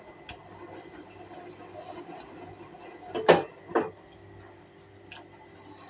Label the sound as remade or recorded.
recorded